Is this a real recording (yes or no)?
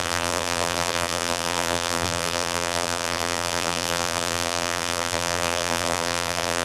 no